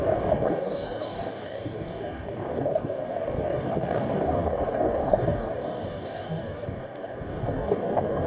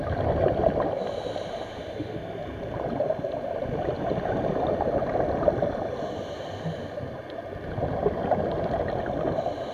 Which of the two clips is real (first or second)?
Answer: second